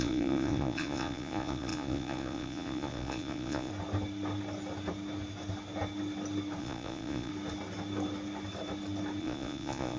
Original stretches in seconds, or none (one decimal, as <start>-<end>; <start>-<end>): 3.7-6.6; 7.3-9.2